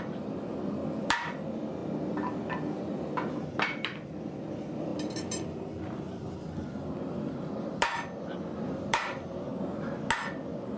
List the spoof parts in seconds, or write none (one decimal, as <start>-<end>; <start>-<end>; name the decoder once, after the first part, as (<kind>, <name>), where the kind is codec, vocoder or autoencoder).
0.0-1.8 (vocoder, BigVGAN v2); 3.3-9.5; 10.2-10.8

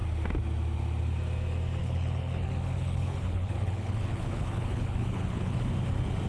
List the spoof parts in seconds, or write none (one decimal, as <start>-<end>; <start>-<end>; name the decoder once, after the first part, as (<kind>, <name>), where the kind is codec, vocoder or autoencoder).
1.8-5.6 (codec, HILCodec)

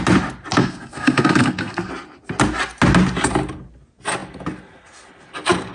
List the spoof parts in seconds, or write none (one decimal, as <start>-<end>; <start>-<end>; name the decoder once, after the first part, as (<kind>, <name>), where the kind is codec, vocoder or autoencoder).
0.6-1.9 (codec, SNAC)

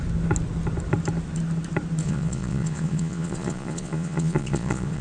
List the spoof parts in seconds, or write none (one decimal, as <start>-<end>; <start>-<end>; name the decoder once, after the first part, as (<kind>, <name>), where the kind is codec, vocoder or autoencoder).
2.0-5.0 (vocoder, Vocos)

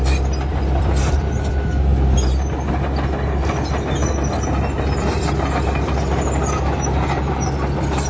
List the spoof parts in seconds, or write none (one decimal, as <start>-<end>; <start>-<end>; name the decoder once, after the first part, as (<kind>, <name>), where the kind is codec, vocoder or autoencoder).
0.5-1.5 (vocoder, BigVGAN v2)

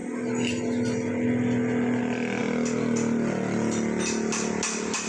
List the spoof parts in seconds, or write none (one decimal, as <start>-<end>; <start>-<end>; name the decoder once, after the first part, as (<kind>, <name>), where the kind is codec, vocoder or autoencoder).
none

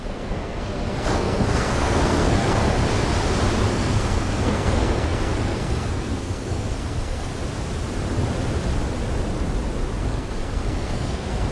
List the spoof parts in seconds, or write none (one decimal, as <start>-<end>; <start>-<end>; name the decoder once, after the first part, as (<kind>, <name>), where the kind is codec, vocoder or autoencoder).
0.0-2.6 (codec, SNAC); 3.7-7.3; 10.0-11.5

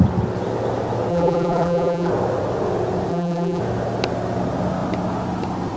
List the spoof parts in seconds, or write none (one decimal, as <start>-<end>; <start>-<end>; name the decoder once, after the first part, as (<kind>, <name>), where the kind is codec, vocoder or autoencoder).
1.1-2.1 (vocoder, BigVGAN v2); 3.1-3.6